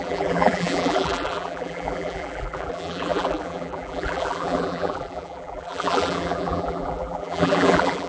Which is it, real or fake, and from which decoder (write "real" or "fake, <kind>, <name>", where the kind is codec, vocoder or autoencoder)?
fake, vocoder, BigVGAN v2